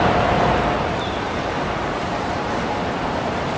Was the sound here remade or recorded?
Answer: remade